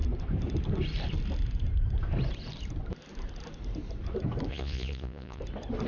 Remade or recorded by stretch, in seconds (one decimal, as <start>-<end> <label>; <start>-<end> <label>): 0.0-4.5 recorded; 4.5-5.4 remade; 5.4-5.9 recorded